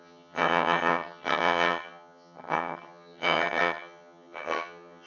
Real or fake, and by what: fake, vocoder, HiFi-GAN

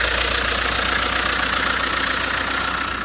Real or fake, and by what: real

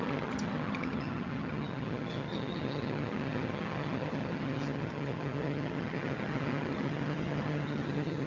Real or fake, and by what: fake, vocoder, HiFi-GAN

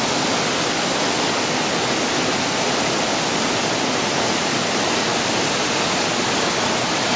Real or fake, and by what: real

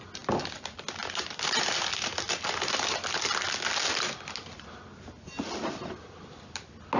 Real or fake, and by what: real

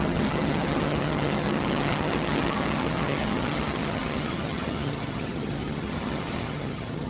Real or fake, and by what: fake, vocoder, HiFi-GAN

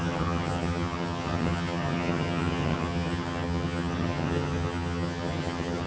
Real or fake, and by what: fake, vocoder, HiFi-GAN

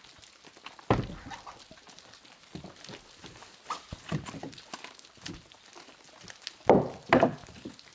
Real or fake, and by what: real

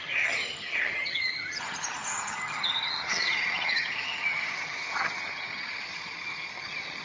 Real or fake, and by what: fake, vocoder, HiFi-GAN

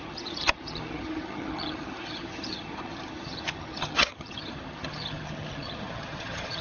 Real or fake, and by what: fake, vocoder, HiFi-GAN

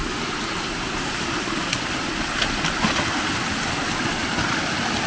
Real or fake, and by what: real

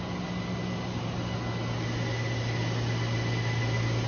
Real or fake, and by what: real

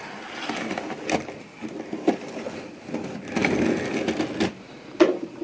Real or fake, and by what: real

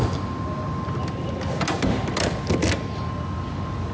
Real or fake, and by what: real